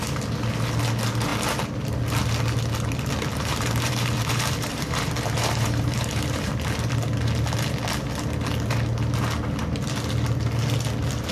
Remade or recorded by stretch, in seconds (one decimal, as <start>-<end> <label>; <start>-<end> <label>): 0.0-3.3 recorded; 3.3-6.5 remade; 6.5-11.3 recorded